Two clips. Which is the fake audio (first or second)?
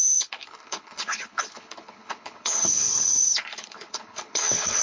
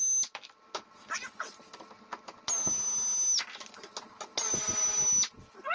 first